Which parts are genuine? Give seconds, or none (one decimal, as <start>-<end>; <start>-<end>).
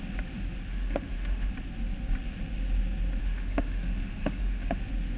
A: 0.0-0.7; 1.5-3.2; 4.8-5.2